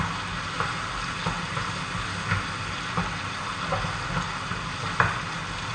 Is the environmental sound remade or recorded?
recorded